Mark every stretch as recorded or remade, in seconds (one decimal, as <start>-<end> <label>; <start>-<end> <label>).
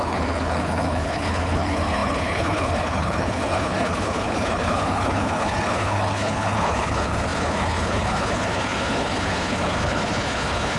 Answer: 0.0-10.8 remade